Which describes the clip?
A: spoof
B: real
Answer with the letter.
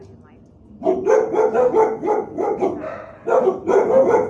B